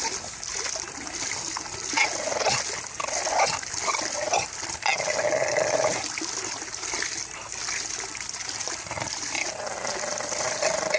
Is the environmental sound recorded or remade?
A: recorded